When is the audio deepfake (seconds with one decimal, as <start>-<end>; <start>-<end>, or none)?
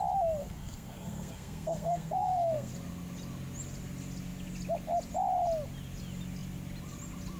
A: 0.4-2.7